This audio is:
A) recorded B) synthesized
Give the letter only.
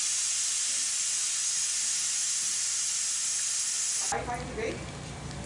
A